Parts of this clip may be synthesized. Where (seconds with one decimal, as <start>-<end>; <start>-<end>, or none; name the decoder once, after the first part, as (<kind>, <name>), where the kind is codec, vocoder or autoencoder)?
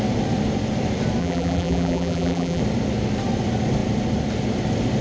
1.2-2.6 (vocoder, BigVGAN v2)